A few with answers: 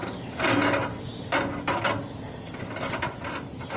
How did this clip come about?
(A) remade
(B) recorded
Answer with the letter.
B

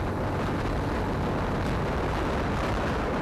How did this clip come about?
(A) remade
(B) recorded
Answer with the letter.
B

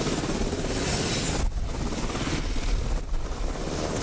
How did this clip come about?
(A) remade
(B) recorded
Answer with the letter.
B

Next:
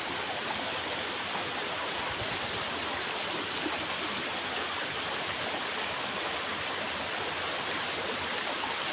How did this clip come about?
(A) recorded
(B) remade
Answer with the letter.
A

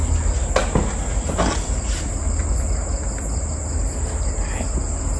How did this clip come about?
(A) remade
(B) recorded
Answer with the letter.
B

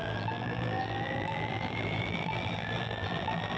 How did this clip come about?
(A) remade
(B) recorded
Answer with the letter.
A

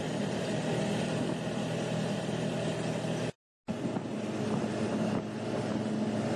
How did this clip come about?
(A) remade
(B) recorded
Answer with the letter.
B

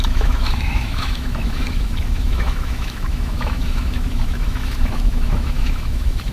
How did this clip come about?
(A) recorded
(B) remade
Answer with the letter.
B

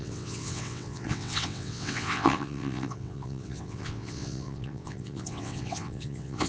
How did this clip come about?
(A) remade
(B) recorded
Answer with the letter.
A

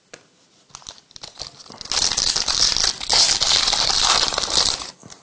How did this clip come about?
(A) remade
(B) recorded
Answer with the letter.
B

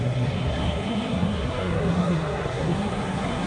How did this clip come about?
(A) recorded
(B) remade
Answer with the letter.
B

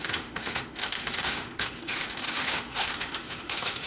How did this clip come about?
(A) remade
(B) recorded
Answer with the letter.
A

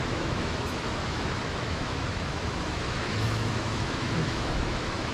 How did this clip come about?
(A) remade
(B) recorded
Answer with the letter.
A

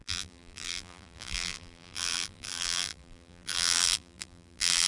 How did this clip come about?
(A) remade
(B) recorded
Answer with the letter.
A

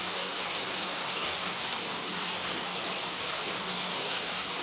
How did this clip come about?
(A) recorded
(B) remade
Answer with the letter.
B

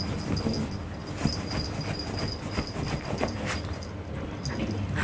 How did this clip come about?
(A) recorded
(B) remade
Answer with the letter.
A